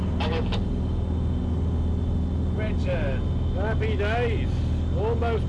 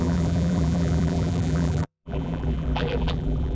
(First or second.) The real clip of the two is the first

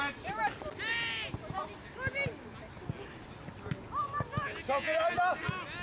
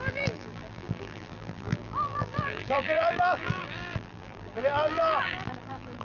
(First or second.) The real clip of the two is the first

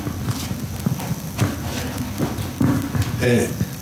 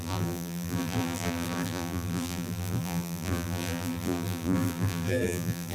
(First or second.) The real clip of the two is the first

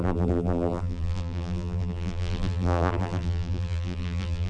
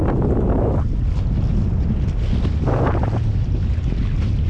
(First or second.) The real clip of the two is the second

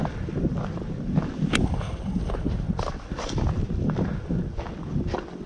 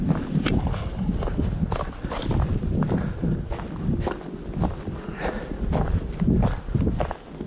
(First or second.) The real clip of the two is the second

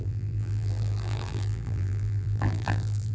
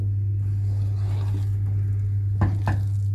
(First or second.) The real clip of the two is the second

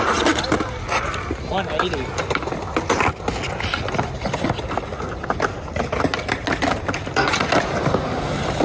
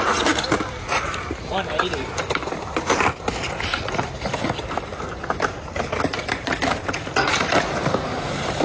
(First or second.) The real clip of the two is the first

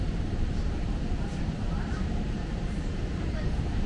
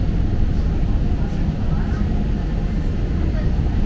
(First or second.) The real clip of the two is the second